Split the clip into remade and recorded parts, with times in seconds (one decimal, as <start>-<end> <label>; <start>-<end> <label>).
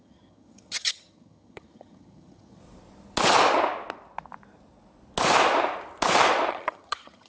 0.0-2.6 remade; 2.6-6.5 recorded; 6.5-7.3 remade